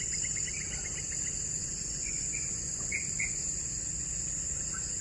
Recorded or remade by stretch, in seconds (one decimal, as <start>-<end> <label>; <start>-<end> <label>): 0.0-1.6 recorded; 1.6-3.1 remade; 3.1-5.0 recorded